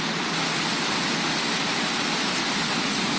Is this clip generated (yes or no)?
no